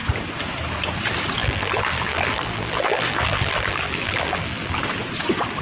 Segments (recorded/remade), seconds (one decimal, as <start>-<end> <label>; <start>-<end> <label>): 0.0-1.4 recorded; 1.4-4.8 remade; 4.8-5.6 recorded